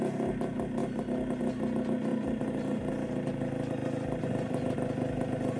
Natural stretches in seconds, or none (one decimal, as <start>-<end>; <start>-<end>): 0.0-0.8; 1.4-2.1; 2.9-5.6